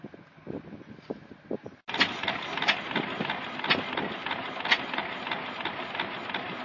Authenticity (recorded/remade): recorded